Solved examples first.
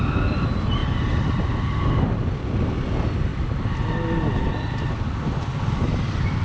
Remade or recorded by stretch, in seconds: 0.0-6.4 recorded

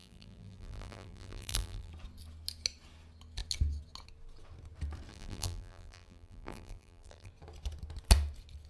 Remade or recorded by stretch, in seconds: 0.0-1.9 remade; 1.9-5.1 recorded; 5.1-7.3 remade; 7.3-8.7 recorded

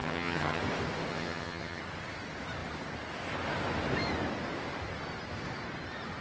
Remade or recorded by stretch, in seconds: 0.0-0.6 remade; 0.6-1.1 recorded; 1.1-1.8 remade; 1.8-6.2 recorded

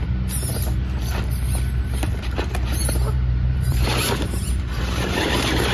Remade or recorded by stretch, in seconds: 0.0-2.7 recorded; 2.7-5.3 remade; 5.3-5.7 recorded